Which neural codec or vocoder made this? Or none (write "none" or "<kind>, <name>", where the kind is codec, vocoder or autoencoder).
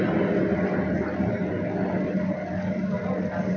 none